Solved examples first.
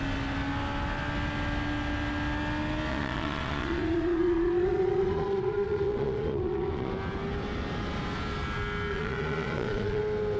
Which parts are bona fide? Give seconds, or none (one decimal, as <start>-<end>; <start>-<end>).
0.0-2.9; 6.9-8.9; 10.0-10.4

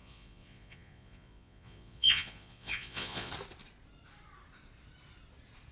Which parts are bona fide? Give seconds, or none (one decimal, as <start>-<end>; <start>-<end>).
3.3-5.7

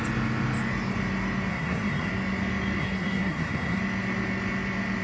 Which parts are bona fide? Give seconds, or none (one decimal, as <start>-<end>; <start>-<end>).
0.0-1.5; 2.1-2.8; 3.8-5.0

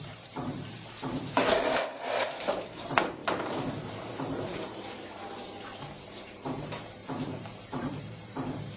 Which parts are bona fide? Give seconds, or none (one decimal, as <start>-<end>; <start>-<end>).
3.2-3.7

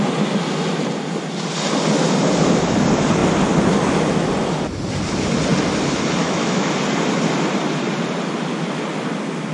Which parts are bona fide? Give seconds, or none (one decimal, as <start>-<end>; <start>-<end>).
0.0-6.2; 6.7-9.5

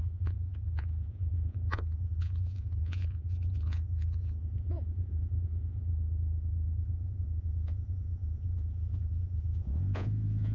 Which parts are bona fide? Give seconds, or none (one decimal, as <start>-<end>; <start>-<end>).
none

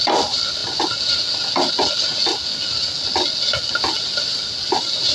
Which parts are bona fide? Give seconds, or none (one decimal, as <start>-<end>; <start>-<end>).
0.0-5.1